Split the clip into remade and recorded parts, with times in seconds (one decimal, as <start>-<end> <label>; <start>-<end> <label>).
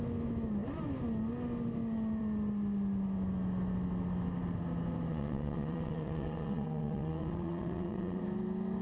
0.0-5.1 recorded; 5.1-8.2 remade; 8.2-8.8 recorded